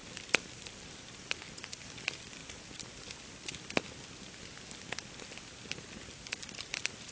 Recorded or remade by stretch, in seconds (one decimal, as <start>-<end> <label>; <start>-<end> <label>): 0.0-7.1 recorded